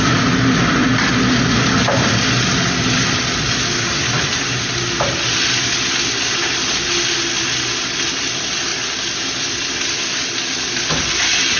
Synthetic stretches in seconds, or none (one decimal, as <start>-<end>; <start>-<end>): none